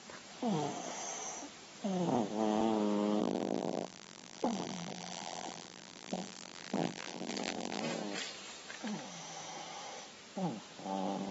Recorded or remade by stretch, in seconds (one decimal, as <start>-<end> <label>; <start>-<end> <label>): 0.0-3.2 recorded; 3.2-7.8 remade; 7.8-11.3 recorded